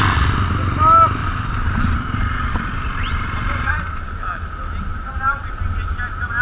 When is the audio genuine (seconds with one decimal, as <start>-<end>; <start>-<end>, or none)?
0.0-1.2; 3.7-4.9; 5.5-6.4